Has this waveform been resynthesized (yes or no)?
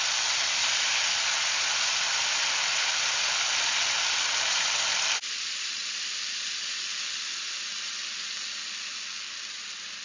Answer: no